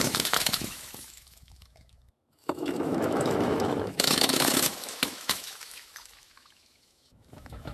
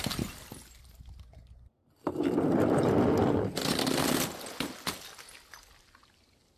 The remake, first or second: first